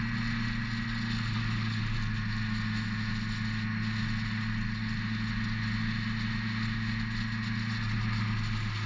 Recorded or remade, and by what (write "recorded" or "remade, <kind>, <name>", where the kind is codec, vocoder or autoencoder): recorded